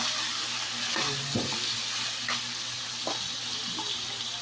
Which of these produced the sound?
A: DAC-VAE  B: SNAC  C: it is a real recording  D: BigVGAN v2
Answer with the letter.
C